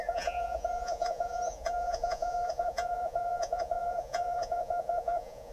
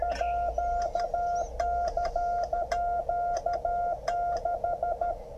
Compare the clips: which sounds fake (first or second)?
first